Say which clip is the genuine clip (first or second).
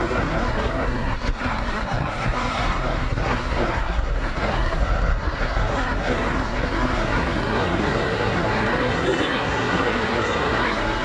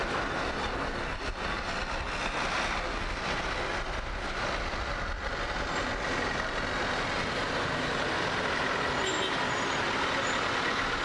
second